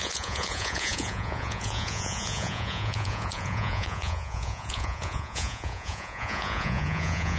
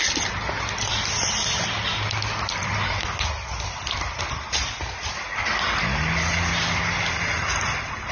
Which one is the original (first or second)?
second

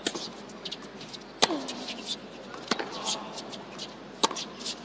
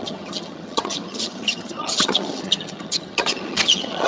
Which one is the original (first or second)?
first